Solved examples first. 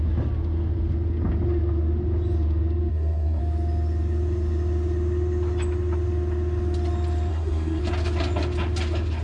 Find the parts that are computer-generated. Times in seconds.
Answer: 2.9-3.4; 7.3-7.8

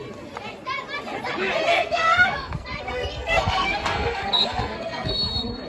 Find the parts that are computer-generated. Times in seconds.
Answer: 1.7-5.1

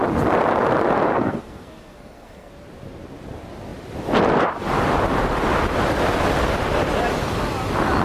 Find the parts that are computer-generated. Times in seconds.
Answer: 1.1-2.5

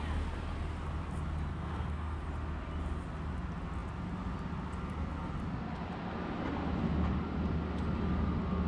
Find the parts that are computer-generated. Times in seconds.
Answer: 1.5-2.2